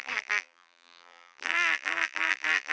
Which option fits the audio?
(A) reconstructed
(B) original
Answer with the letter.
A